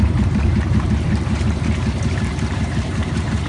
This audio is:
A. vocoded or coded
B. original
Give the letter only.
A